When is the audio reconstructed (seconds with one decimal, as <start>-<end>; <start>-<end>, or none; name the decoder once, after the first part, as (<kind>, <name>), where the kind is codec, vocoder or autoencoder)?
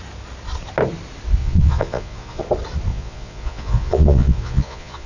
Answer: 1.4-2.4 (vocoder, Vocos); 2.9-5.1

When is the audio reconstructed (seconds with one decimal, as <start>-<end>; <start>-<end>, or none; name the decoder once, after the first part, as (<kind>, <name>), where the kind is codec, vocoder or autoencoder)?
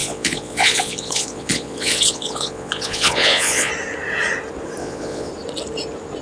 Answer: 0.0-3.7 (vocoder, Vocos); 4.8-5.3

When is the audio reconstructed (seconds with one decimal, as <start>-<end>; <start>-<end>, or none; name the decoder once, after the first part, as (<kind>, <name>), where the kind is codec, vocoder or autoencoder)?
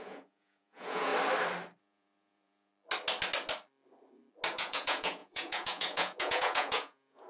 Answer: 0.0-1.1 (vocoder, Vocos); 1.8-2.7; 4.5-7.3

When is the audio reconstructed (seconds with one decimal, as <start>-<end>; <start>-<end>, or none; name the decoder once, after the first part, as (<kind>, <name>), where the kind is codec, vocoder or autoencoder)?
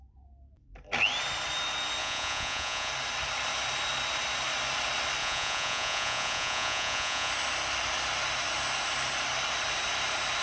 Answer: 2.0-2.9 (vocoder, Vocos); 5.2-7.3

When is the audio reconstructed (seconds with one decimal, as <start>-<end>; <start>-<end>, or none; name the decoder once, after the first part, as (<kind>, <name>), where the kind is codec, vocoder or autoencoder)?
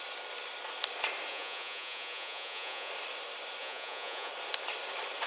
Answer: 1.3-2.9 (vocoder, Vocos); 3.6-4.3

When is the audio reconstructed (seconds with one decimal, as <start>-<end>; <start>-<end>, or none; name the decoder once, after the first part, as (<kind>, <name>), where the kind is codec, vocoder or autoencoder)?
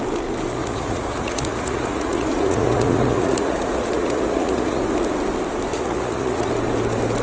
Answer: 0.6-4.8 (vocoder, Vocos); 5.7-6.5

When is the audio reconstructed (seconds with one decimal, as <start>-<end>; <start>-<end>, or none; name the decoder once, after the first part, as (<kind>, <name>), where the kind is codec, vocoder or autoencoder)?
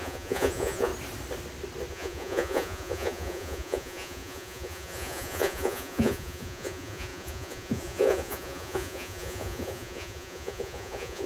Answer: 0.0-0.9 (vocoder, Vocos); 1.9-11.3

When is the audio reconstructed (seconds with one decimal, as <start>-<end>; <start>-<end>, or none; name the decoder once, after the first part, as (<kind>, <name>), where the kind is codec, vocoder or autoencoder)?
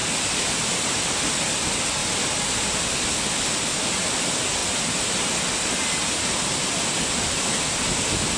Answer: none